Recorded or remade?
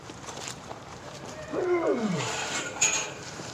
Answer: remade